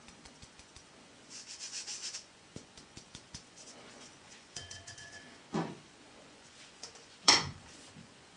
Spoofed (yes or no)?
yes